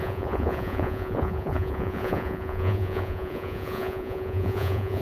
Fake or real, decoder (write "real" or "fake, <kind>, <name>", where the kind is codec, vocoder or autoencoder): fake, vocoder, Vocos